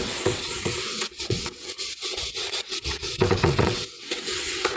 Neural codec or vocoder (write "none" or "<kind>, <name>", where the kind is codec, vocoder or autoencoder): vocoder, WaveNeXt